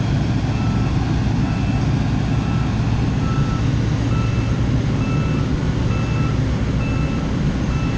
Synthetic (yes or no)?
no